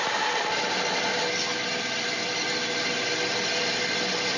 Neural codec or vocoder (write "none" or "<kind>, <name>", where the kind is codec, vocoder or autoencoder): none